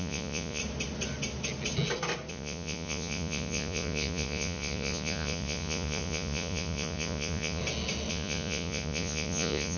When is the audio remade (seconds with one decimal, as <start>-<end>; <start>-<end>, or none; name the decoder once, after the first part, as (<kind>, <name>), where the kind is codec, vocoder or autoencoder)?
0.0-0.6 (vocoder, Vocos); 2.3-7.6; 8.1-9.8